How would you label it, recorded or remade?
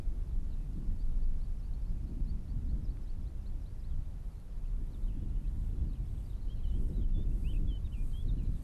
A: recorded